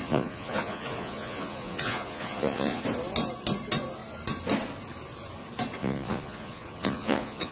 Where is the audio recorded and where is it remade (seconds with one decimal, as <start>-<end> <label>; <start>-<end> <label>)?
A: 0.0-2.8 remade; 2.8-5.8 recorded; 5.8-7.5 remade